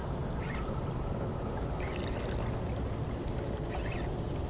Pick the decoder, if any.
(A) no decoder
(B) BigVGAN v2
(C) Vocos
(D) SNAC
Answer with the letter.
A